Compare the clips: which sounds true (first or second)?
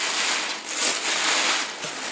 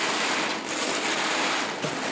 first